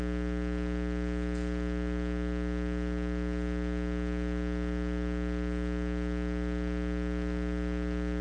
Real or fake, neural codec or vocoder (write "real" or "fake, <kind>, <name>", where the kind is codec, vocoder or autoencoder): real